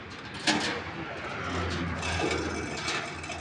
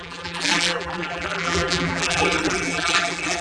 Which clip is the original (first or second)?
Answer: first